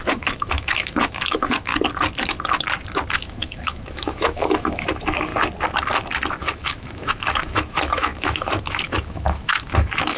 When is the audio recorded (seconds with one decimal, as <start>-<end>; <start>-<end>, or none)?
1.7-3.1; 5.3-6.4